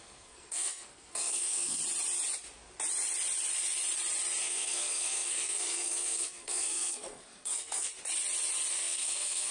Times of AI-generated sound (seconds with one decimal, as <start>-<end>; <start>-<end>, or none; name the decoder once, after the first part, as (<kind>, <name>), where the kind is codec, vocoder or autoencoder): 0.0-1.8 (codec, SNAC); 4.4-7.9; 8.7-9.5